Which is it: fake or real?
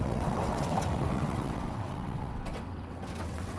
fake